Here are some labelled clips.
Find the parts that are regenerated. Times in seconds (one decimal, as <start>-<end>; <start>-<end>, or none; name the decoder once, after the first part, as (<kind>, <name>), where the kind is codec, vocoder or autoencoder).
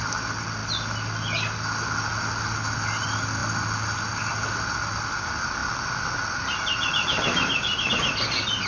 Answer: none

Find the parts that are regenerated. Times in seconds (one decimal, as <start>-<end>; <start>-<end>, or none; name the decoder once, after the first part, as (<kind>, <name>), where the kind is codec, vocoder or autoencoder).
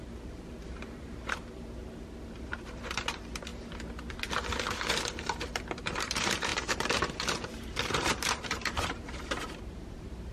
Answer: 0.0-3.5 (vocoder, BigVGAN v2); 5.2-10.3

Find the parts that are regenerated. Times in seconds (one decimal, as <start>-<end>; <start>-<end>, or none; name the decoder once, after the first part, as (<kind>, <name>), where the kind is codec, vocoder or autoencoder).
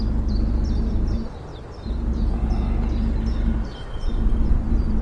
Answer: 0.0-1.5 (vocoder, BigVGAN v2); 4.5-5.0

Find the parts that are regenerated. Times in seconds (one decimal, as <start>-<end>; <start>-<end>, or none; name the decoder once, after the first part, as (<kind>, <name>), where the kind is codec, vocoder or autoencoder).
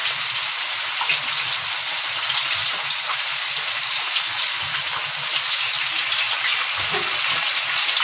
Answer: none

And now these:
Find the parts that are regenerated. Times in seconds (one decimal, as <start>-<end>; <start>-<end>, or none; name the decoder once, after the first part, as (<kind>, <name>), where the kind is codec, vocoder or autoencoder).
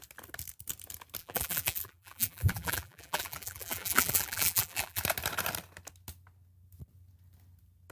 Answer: 1.2-5.0 (vocoder, BigVGAN v2)